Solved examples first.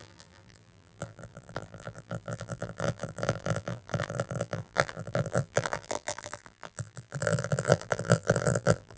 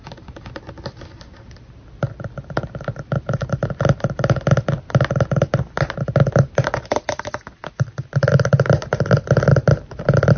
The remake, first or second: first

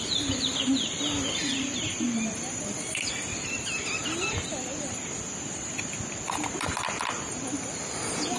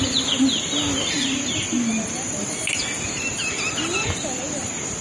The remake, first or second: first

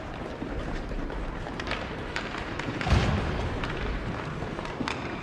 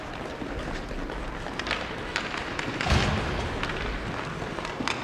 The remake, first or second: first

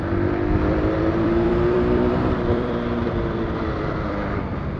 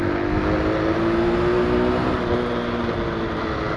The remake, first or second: first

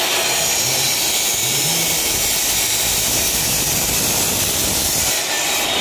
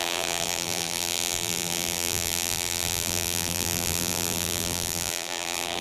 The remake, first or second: second